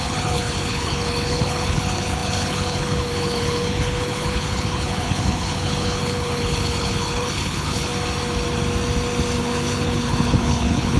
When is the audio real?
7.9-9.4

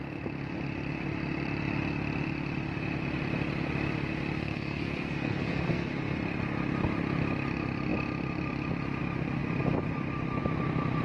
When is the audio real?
0.0-4.4; 5.9-11.0